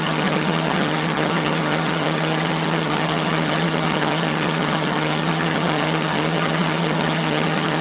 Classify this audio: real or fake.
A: fake